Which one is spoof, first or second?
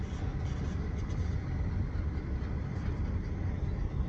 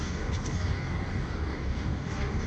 second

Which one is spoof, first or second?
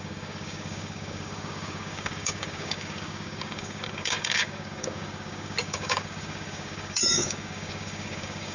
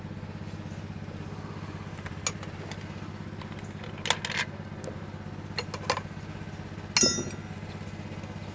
first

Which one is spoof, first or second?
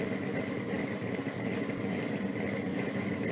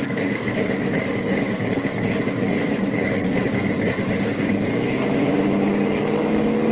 second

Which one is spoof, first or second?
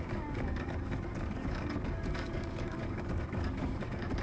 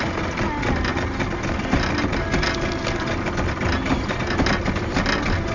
first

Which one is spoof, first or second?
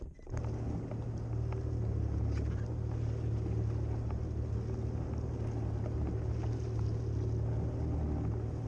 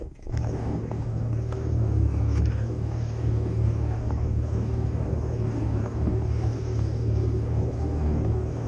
second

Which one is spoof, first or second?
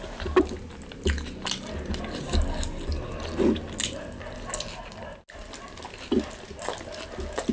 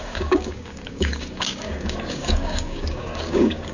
second